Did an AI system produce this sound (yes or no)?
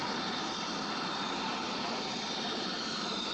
yes